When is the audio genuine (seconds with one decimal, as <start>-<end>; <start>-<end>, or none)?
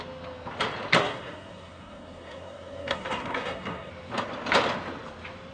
0.0-1.0; 3.9-5.5